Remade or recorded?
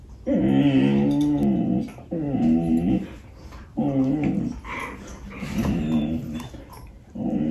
recorded